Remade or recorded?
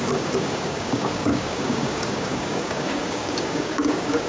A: remade